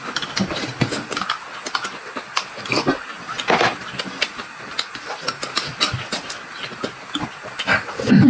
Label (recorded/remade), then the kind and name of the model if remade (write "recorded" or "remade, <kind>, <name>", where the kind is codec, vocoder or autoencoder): recorded